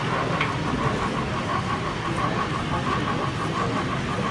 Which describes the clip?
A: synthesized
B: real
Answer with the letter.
B